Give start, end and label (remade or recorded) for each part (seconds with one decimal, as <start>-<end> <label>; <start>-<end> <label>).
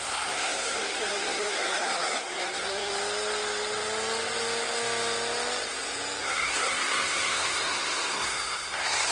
0.0-2.9 remade; 2.9-6.2 recorded; 6.2-9.1 remade